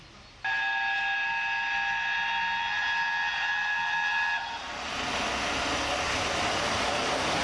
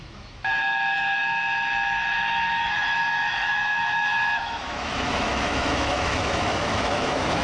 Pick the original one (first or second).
first